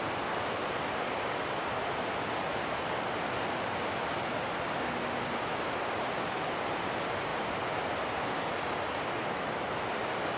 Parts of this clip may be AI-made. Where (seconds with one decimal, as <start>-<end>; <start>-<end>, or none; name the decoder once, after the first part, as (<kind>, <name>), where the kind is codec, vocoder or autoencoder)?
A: none